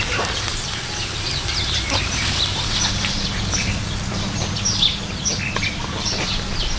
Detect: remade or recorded remade